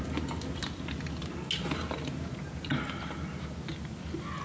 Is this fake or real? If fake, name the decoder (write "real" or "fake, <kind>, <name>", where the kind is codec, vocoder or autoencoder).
real